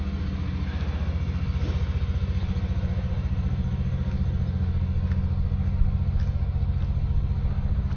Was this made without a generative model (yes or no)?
yes